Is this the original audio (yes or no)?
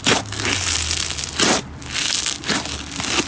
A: yes